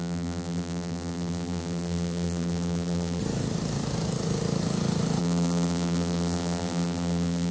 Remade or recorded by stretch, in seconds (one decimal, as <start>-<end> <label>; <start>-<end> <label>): 0.0-3.2 remade; 3.2-5.2 recorded; 5.2-7.5 remade